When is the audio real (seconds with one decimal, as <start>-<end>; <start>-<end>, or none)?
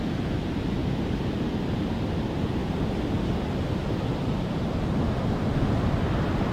0.0-0.8; 2.1-6.5